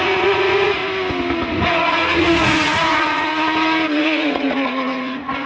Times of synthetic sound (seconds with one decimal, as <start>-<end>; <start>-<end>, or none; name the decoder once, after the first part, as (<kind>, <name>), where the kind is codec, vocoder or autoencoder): 0.0-0.8 (vocoder, Vocos); 1.5-3.3; 4.0-5.5